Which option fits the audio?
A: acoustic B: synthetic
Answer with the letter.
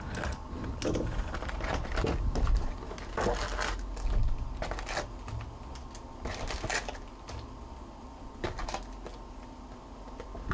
A